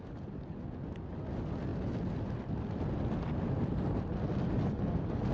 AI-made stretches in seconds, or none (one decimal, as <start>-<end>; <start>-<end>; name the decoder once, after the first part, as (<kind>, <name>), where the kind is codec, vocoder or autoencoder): none